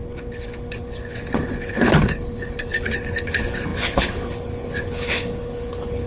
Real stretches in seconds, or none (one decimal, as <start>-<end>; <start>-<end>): none

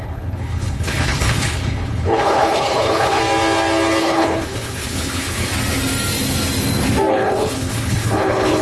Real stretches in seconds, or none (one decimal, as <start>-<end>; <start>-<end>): 3.2-4.0; 5.5-7.1

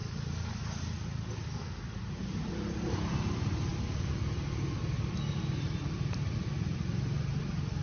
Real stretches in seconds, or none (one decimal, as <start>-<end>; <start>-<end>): 0.0-7.8

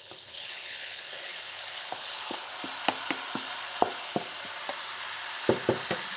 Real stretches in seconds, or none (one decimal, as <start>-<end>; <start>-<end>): 2.5-6.2

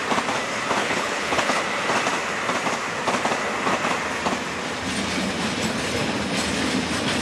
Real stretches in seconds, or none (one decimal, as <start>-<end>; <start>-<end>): 0.0-0.8; 1.6-7.2

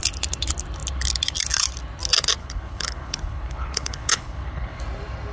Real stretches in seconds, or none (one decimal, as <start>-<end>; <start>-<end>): 0.0-2.4; 4.8-5.3